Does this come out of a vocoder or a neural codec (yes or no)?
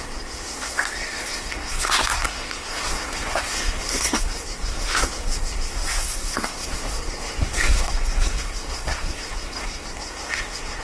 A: yes